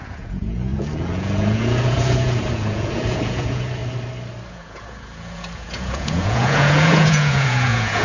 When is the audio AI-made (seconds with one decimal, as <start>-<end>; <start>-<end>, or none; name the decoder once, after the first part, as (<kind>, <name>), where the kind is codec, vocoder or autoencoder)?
0.0-3.8 (vocoder, Vocos); 4.5-8.0